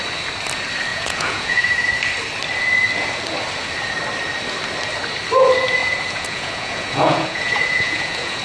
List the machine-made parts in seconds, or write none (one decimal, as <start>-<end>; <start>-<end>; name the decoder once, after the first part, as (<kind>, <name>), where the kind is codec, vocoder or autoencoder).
0.9-1.9 (vocoder, Vocos); 5.8-8.4